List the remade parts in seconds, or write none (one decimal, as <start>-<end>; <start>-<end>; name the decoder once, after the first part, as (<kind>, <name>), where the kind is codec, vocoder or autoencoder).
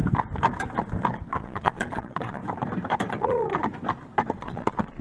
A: 1.3-2.4 (vocoder, Vocos); 3.1-3.5; 4.4-5.0